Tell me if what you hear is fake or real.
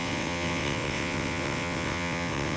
fake